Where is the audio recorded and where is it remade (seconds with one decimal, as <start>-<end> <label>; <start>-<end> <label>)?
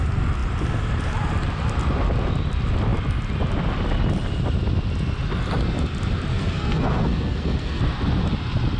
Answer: 0.0-6.3 recorded; 6.3-7.8 remade; 7.8-8.8 recorded